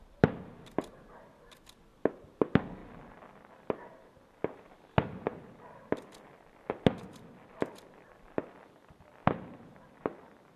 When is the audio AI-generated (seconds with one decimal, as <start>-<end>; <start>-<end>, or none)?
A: 5.3-6.7